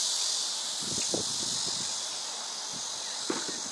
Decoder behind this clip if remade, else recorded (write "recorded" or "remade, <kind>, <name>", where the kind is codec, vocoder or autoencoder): recorded